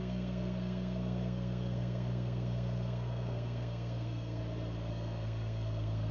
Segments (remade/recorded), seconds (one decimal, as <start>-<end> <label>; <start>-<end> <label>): 0.0-4.4 remade; 4.4-4.9 recorded; 4.9-6.1 remade